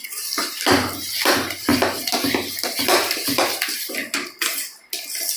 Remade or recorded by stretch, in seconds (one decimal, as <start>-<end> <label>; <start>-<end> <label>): 0.0-5.4 recorded